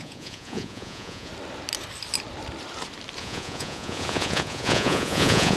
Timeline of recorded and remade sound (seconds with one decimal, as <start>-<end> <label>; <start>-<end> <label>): 0.0-1.3 remade; 1.3-3.2 recorded; 3.2-5.6 remade